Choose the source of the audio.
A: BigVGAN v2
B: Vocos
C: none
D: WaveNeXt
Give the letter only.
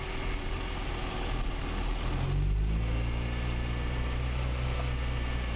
C